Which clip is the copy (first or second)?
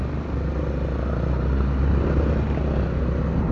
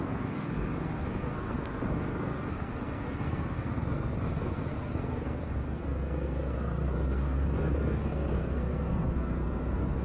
second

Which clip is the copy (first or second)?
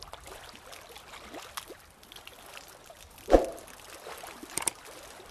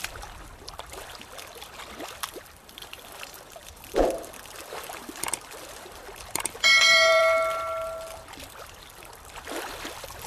second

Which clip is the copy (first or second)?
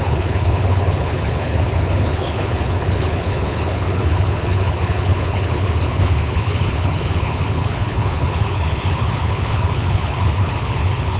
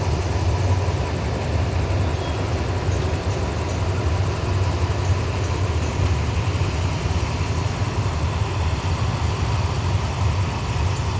first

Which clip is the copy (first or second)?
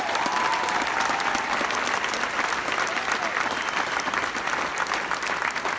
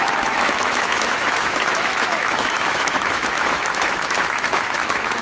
second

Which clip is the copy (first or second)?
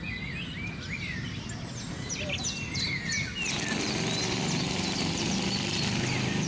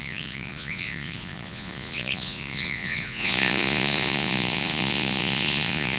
second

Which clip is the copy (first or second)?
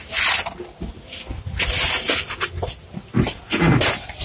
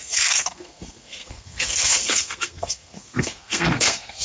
second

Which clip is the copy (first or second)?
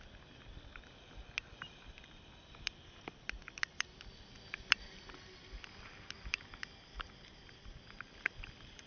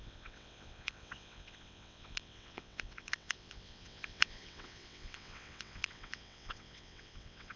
second